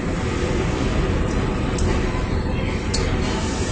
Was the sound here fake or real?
real